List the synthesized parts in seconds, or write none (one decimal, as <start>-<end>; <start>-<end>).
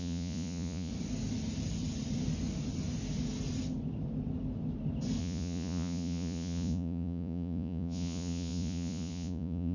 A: 0.0-0.9; 5.2-9.7